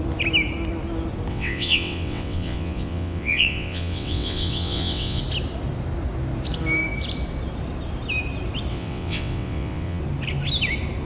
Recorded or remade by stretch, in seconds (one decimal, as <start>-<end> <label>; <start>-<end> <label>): 0.0-1.3 recorded; 1.3-5.2 remade; 5.2-8.7 recorded; 8.7-10.0 remade; 10.0-11.0 recorded

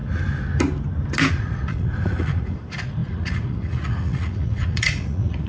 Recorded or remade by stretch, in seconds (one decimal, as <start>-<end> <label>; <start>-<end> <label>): 0.0-1.3 recorded; 1.3-5.5 remade

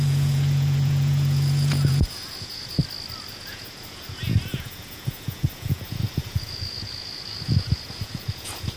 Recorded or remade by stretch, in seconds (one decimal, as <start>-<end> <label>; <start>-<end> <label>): 0.0-2.8 remade; 2.8-3.3 recorded; 3.3-8.8 remade

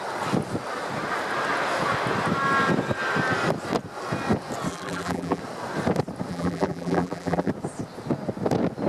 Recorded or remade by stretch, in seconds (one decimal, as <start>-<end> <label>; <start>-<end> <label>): 0.0-4.7 recorded; 4.7-5.4 remade; 5.4-6.3 recorded; 6.3-7.5 remade; 7.5-8.9 recorded

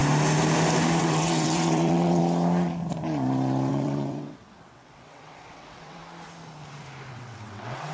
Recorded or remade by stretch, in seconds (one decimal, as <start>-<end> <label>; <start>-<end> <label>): 0.0-1.0 recorded; 1.0-2.2 remade; 2.2-3.7 recorded; 3.7-6.0 remade; 6.0-7.1 recorded; 7.1-7.9 remade

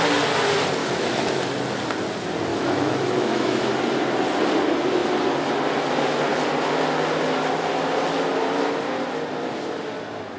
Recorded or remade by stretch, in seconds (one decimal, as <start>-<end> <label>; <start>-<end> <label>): 0.0-0.8 recorded; 0.8-1.4 remade; 1.4-2.5 recorded; 2.5-3.7 remade; 3.7-10.4 recorded

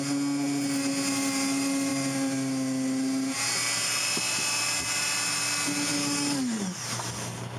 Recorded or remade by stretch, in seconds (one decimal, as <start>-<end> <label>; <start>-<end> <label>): 0.0-5.9 recorded; 5.9-6.6 remade; 6.6-7.6 recorded